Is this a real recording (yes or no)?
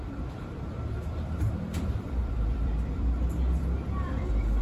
no